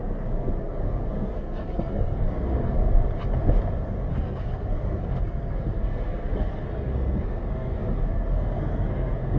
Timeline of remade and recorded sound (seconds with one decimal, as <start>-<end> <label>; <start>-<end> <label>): 0.0-3.0 remade; 3.0-4.1 recorded; 4.1-9.4 remade